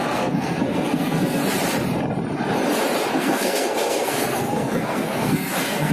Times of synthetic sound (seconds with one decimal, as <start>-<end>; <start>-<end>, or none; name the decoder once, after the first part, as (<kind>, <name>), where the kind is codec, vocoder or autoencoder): 0.0-1.4 (codec, SNAC); 3.1-5.9

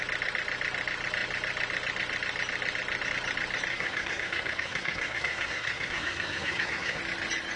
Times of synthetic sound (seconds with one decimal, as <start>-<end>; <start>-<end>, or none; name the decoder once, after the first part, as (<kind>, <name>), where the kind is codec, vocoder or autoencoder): 3.7-7.0 (codec, SNAC)

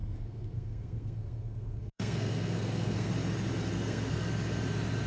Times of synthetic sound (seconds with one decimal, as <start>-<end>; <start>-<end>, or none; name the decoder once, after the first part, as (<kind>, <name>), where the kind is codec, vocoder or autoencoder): 0.0-3.1 (codec, SNAC); 3.7-4.3

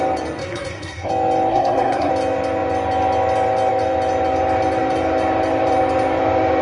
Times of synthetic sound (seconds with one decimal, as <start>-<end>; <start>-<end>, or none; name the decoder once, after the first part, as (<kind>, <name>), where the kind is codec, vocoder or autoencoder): 0.4-1.1 (codec, SNAC); 1.5-2.1

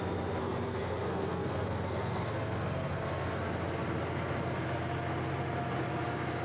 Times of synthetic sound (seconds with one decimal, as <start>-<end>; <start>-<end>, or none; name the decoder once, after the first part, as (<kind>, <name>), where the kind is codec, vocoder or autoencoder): 0.4-3.4 (codec, SNAC)

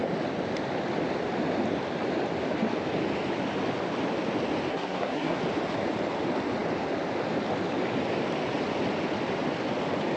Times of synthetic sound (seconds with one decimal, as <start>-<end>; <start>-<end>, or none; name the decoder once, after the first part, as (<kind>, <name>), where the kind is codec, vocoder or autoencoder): 4.7-5.4 (codec, SNAC)